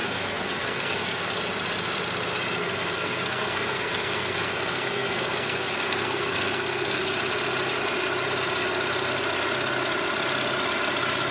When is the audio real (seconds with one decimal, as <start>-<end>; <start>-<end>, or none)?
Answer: 1.4-2.6; 7.0-11.3